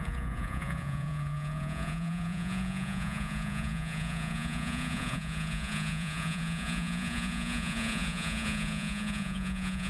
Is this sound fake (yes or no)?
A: yes